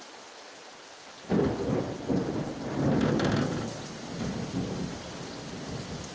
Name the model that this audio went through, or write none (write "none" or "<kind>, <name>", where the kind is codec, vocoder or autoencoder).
none